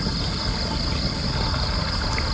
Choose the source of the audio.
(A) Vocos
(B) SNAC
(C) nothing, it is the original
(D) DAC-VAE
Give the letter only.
C